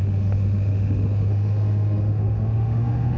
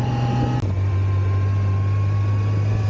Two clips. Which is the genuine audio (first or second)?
second